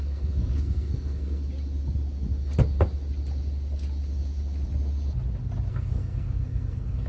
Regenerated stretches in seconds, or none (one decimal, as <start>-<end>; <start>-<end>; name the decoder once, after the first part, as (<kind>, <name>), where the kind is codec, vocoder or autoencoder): 0.0-1.4 (codec, SNAC); 5.7-7.1